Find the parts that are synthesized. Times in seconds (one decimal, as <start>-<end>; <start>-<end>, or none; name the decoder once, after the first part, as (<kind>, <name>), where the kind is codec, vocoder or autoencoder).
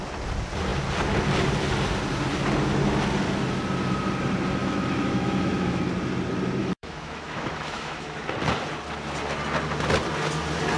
4.6-5.8 (autoencoder, DAC-VAE); 6.6-8.2